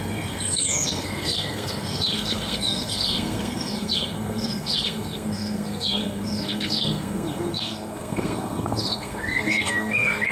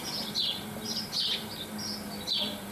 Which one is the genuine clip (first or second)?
second